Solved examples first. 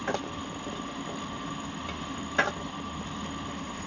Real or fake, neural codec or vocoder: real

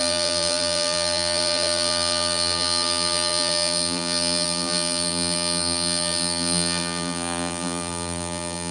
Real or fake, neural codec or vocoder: fake, vocoder, BigVGAN v2